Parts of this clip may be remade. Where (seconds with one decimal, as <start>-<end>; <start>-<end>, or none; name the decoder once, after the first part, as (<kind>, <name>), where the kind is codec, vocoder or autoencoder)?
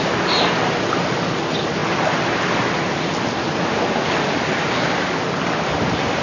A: none